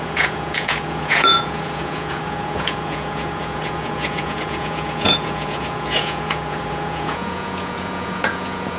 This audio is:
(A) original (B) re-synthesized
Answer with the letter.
B